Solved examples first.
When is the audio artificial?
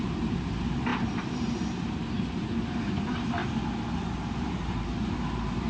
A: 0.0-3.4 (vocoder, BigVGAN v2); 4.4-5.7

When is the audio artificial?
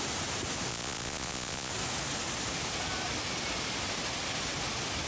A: 0.7-1.7 (vocoder, Vocos)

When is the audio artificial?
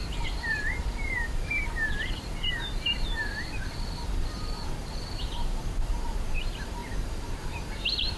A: 0.0-8.2 (vocoder, BigVGAN v2)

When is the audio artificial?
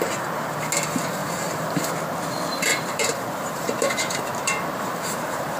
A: 1.2-1.8 (vocoder, BigVGAN v2); 2.7-5.6